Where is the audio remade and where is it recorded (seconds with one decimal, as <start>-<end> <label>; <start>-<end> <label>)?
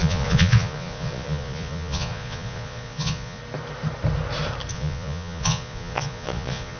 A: 0.0-3.4 remade; 3.4-4.7 recorded; 4.7-6.8 remade